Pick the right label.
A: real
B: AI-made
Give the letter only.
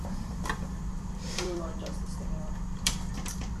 B